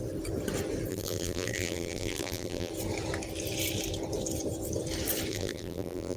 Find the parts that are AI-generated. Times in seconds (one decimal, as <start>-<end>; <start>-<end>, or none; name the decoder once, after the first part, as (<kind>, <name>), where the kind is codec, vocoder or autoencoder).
0.9-2.7 (vocoder, BigVGAN v2); 5.3-6.2